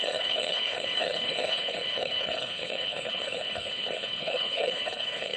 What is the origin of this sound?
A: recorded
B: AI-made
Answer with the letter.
B